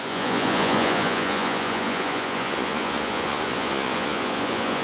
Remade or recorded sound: remade